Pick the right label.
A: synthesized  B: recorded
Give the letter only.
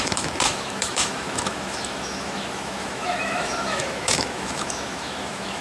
A